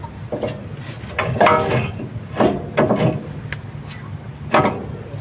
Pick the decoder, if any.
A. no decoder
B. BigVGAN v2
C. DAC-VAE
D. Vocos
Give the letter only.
A